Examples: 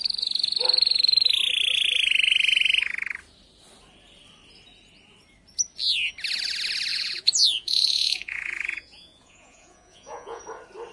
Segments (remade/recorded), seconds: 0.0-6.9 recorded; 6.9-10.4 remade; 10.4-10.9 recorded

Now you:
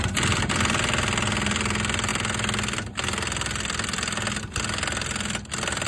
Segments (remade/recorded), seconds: 0.0-5.9 recorded

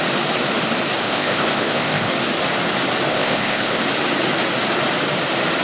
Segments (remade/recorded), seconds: 0.0-1.0 recorded; 1.0-2.1 remade; 2.1-3.1 recorded; 3.1-3.8 remade; 3.8-5.6 recorded